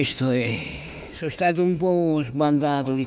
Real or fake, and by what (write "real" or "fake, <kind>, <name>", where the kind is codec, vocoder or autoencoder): fake, autoencoder, DAC-VAE